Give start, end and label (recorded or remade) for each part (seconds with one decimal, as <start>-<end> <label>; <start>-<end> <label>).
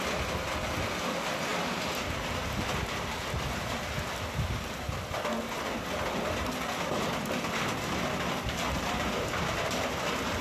0.0-1.5 recorded; 1.5-2.7 remade; 2.7-10.4 recorded